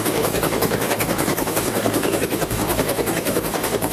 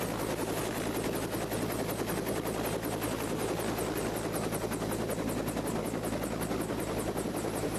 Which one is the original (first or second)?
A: second